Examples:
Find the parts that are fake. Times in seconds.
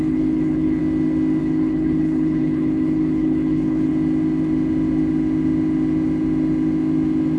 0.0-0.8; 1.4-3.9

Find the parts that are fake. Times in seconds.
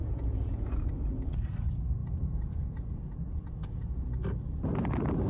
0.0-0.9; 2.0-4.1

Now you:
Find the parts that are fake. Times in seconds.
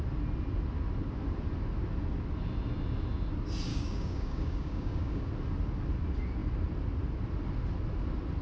3.7-5.3